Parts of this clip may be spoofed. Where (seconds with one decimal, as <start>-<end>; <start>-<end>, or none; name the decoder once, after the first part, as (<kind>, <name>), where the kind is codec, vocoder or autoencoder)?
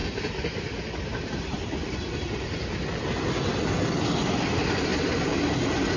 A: none